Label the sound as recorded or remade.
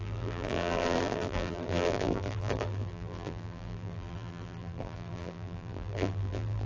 remade